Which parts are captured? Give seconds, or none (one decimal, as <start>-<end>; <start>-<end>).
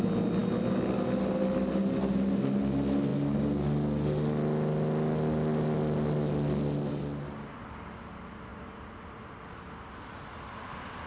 0.0-11.1